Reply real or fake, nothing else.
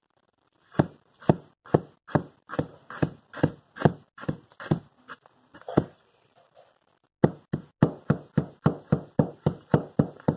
real